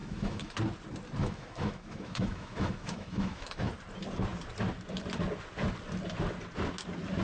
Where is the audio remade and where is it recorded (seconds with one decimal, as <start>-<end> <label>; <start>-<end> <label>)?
0.0-0.5 remade; 0.5-1.2 recorded; 1.2-3.7 remade; 3.7-7.2 recorded